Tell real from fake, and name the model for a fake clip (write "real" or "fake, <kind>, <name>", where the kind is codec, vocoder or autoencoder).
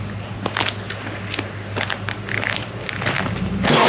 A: real